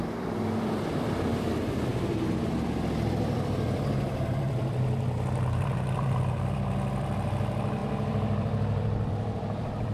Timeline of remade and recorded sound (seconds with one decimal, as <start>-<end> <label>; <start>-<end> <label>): 0.0-9.9 remade